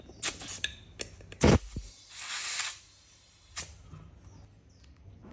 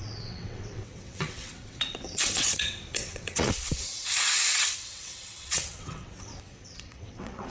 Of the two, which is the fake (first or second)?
second